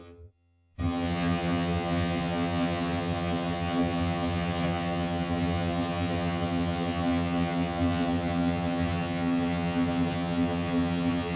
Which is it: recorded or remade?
remade